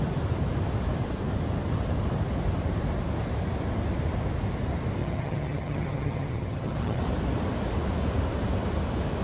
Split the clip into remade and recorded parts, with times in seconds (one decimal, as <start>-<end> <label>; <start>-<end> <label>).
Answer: 0.0-5.0 recorded; 5.0-7.0 remade; 7.0-9.2 recorded